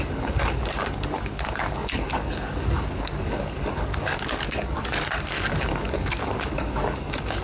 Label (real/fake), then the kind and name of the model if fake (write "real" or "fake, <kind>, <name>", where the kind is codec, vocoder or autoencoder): fake, codec, DAC